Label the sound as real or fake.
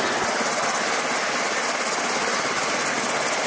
real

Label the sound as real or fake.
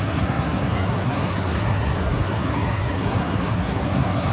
fake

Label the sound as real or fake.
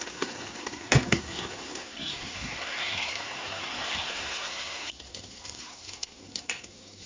fake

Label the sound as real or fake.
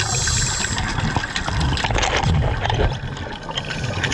real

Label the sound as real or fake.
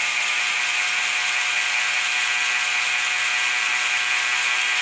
real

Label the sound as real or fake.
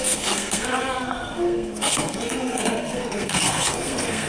fake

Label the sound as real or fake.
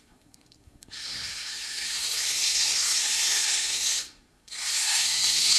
fake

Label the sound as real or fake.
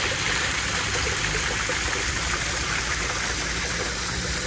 real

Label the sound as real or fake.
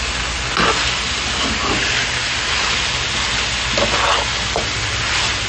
real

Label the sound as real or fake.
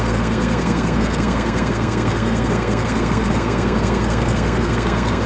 fake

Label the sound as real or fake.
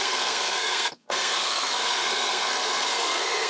fake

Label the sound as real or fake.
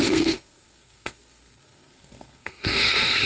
fake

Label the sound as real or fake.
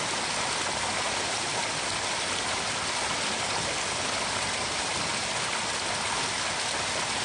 real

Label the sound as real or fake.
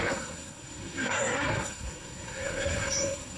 fake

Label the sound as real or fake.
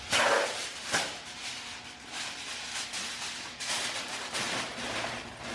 real